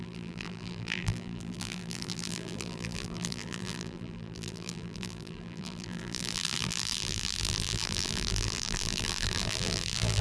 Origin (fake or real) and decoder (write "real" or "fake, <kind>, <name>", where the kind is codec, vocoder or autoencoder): fake, vocoder, BigVGAN v2